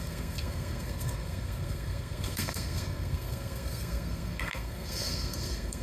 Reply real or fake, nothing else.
fake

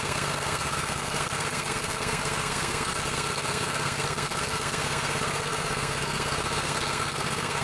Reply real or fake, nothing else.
fake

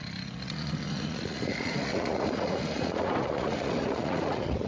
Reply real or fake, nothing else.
fake